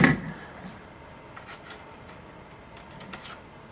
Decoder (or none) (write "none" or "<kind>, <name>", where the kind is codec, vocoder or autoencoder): none